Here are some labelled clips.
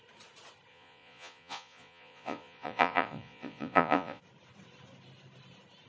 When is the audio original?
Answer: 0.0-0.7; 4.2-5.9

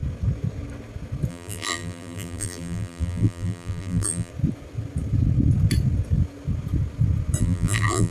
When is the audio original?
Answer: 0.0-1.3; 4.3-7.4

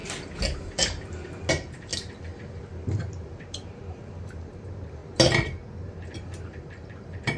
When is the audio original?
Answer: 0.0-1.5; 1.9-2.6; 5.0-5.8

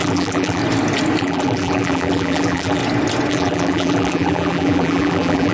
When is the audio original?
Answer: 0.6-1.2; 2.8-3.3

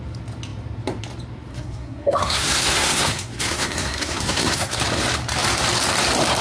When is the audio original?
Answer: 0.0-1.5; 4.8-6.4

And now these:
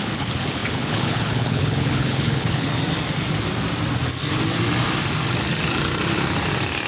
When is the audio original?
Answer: 2.7-6.9

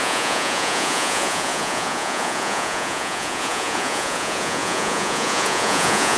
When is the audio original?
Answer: none

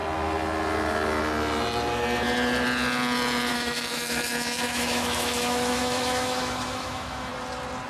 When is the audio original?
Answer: 0.0-3.5; 7.3-7.9